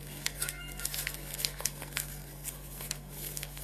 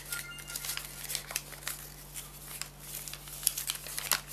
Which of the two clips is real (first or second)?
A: second